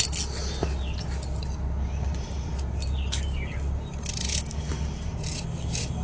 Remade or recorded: recorded